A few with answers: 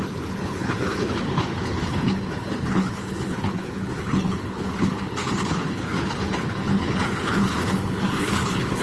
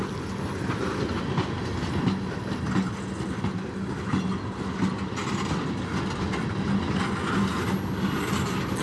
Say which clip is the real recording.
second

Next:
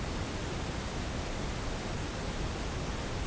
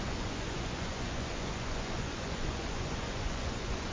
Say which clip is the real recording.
first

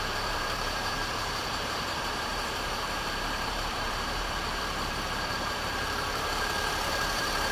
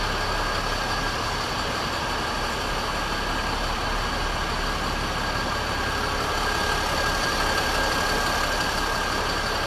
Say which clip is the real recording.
second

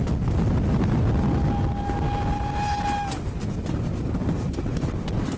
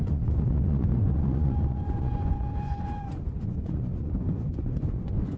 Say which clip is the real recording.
first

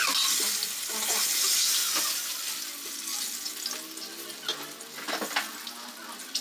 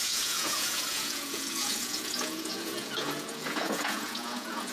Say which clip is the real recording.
first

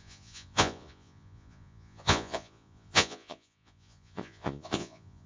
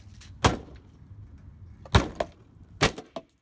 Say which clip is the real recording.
second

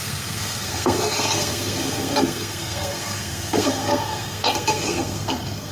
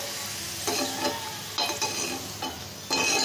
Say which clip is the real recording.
second